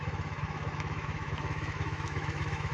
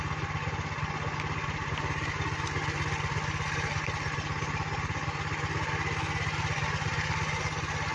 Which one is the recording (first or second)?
second